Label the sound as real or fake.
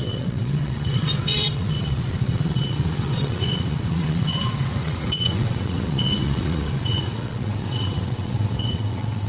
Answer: fake